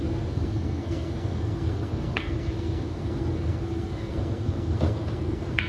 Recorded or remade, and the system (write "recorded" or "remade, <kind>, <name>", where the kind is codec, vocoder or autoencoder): remade, codec, SNAC